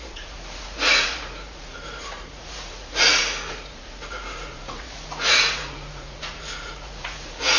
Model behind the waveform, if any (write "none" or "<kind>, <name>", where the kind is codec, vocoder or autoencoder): vocoder, Vocos